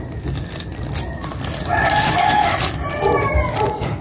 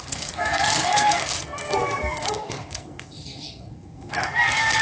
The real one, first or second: first